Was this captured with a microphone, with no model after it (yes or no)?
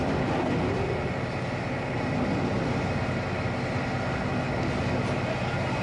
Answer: yes